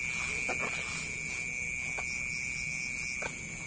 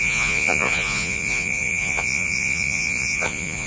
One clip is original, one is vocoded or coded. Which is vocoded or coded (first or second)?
second